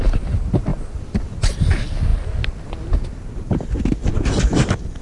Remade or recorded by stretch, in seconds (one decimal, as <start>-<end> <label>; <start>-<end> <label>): 0.0-5.0 recorded